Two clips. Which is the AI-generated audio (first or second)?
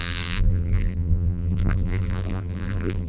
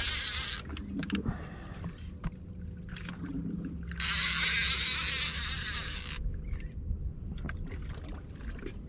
first